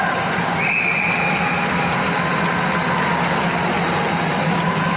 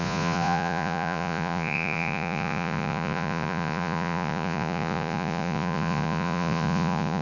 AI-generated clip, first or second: second